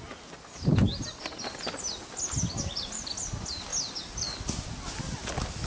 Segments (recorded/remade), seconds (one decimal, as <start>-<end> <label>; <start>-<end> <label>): 0.0-5.7 recorded